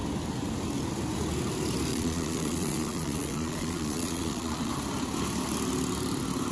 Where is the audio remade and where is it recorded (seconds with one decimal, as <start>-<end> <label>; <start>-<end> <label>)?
0.0-1.9 recorded; 1.9-4.7 remade; 4.7-6.5 recorded